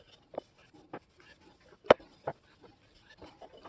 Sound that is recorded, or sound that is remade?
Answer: recorded